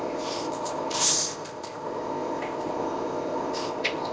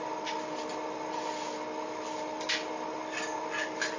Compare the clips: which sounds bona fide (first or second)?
second